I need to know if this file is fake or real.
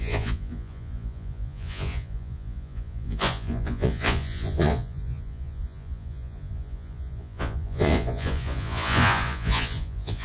fake